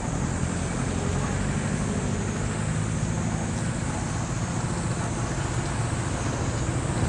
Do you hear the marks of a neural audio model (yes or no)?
no